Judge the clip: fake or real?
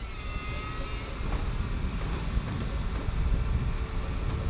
real